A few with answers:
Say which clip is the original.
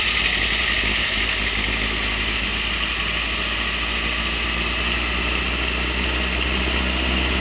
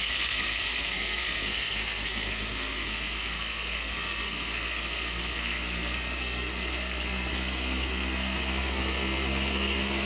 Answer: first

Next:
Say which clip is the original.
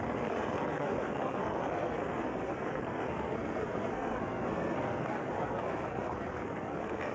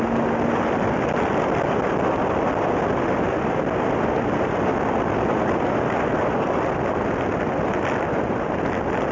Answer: second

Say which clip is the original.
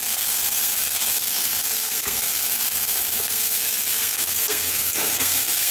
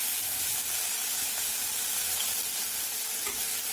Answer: second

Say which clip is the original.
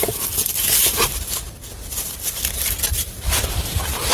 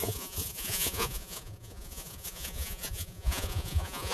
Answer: first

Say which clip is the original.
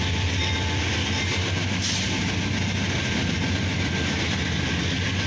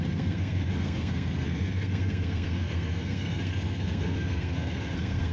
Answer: first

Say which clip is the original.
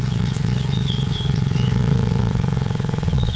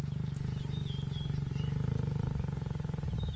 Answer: second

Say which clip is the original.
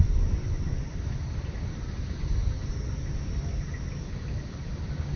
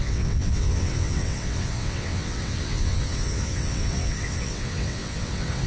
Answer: first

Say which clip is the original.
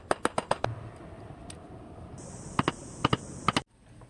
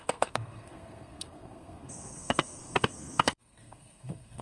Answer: first